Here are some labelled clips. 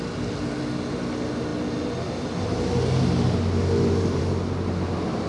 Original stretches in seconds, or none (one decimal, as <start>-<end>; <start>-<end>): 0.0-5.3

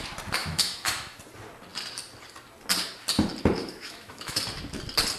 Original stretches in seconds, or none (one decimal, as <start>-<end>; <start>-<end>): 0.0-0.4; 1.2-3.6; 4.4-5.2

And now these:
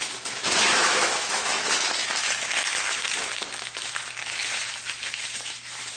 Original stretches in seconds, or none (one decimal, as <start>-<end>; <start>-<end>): none

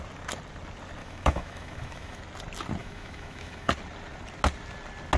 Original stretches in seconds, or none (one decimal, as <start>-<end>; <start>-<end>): 0.0-1.0; 2.2-2.8; 3.7-5.2

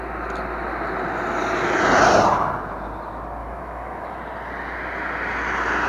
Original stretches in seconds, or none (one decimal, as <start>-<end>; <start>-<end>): 0.0-3.4; 4.2-5.9

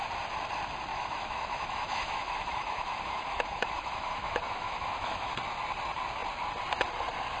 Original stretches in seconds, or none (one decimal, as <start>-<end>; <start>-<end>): 0.0-0.9; 5.3-7.4

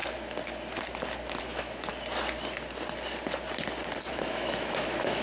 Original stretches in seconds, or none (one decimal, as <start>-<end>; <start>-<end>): 0.0-1.4; 1.9-4.1

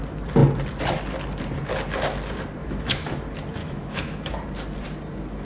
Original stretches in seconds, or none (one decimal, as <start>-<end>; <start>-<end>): 0.0-2.6; 3.1-3.6; 4.3-5.4